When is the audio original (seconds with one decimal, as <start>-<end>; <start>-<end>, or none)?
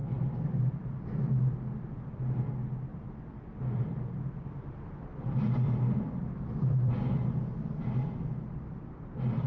2.4-2.9; 7.5-9.5